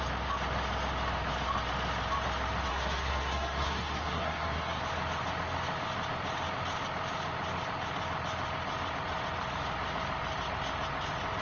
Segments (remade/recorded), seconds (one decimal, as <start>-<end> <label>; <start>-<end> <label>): 0.0-2.7 recorded; 2.7-4.8 remade; 4.8-11.4 recorded